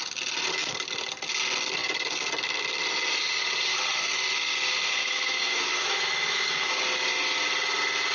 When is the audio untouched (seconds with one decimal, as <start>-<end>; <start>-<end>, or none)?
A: 0.0-5.0; 6.7-8.1